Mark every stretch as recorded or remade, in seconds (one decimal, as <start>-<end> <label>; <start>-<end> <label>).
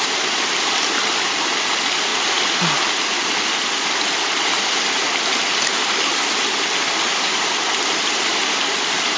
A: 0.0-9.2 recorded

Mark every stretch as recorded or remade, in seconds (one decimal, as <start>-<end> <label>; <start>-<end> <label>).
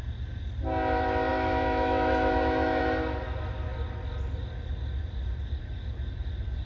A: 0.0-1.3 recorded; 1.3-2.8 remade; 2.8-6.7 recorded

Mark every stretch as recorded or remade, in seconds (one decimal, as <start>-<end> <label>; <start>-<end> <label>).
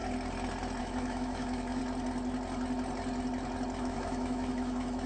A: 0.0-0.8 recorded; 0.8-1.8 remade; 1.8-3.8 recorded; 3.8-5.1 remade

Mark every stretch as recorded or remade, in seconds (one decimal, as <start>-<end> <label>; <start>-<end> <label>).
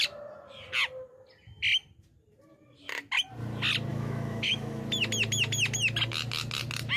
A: 0.0-3.9 recorded; 3.9-4.8 remade; 4.8-7.0 recorded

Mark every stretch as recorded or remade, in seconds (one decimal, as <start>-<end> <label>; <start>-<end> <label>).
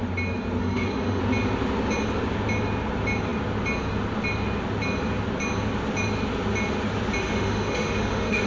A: 0.0-0.6 recorded; 0.6-1.2 remade; 1.2-7.2 recorded; 7.2-8.5 remade